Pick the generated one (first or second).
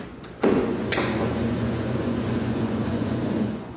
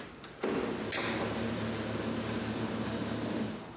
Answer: first